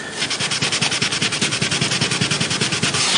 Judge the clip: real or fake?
real